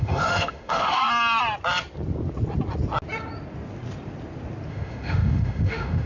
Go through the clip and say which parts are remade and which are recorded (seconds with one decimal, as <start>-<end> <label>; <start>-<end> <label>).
0.0-1.0 remade; 1.0-4.7 recorded; 4.7-6.1 remade